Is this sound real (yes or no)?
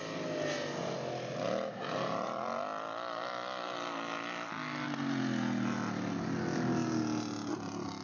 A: yes